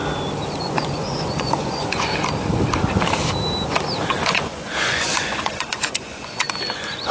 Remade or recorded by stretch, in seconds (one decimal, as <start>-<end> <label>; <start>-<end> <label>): 0.0-0.6 recorded; 0.6-2.1 remade; 2.1-4.1 recorded; 4.1-7.1 remade